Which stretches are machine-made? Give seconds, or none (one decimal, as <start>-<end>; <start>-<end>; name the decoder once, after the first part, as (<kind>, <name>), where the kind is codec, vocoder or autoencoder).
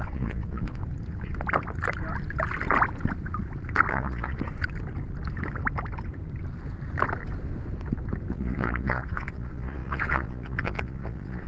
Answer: 0.0-0.8 (vocoder, Vocos); 3.9-4.4; 8.3-11.5